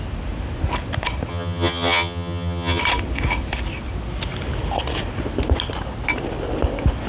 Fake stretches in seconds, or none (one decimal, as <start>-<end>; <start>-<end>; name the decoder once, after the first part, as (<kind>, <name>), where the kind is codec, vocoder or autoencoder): 1.3-2.8 (vocoder, HiFi-GAN)